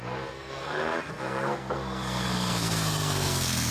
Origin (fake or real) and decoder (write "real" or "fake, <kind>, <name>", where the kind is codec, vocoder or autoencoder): fake, codec, SNAC